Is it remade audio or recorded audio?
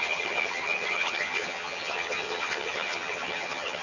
remade